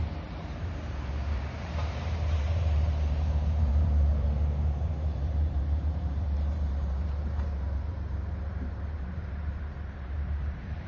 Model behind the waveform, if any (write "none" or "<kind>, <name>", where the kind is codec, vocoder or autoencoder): vocoder, BigVGAN v2